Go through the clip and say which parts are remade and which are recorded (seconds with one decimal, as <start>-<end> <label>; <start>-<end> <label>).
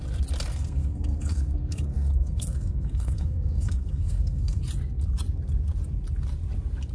0.0-0.5 recorded; 0.5-4.6 remade; 4.6-6.9 recorded